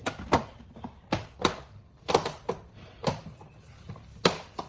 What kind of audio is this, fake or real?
real